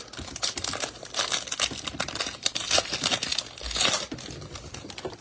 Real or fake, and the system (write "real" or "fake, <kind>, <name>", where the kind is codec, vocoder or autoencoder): real